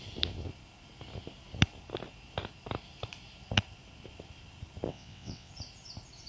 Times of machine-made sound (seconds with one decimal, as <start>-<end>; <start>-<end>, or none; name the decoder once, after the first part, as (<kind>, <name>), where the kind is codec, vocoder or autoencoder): 4.9-5.5 (vocoder, WaveNeXt)